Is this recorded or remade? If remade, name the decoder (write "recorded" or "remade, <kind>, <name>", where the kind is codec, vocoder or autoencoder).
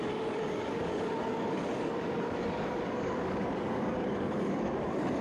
remade, codec, DAC